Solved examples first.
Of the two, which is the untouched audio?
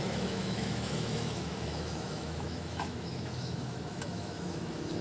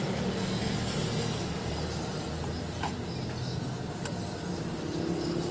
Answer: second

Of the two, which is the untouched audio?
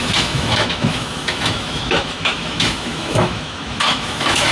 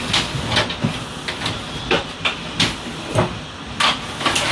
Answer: second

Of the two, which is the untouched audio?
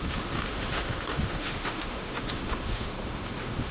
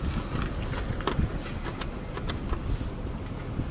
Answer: second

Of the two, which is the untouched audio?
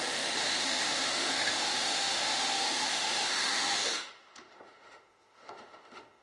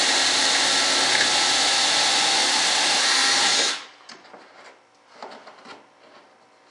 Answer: second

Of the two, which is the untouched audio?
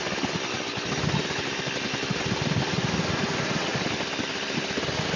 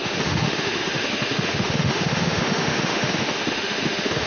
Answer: first